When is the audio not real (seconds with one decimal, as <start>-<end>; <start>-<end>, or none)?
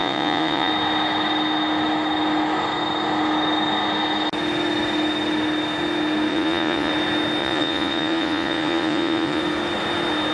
0.0-0.7; 6.3-6.9; 7.4-9.4